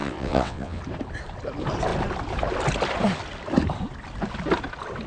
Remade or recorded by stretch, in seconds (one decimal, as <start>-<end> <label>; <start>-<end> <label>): 0.0-0.8 remade; 0.8-5.1 recorded